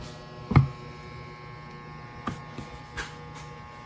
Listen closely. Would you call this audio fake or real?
real